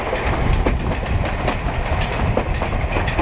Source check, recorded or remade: recorded